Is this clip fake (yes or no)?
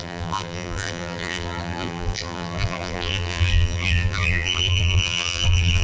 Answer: yes